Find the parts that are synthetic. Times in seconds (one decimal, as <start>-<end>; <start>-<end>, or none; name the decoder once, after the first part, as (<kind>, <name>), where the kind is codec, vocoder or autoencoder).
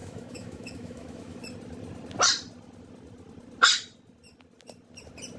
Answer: 0.0-1.4 (autoencoder, DAC-VAE)